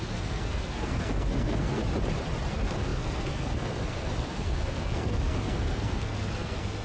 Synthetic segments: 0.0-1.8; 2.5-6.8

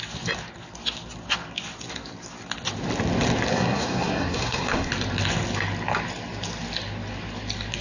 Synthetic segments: 3.5-4.9

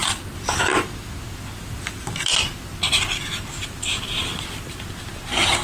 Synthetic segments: none

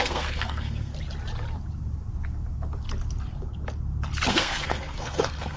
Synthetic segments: 0.0-0.9; 4.3-5.6

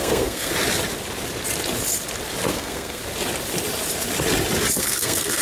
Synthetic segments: 0.0-0.5; 2.5-3.0; 4.8-5.4

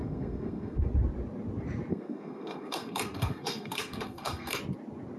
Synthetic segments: 0.0-0.8; 1.9-4.6